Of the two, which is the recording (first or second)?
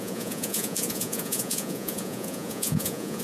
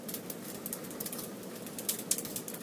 second